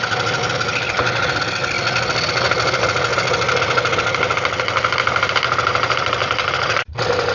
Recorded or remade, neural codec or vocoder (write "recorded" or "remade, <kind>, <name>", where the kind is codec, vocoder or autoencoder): recorded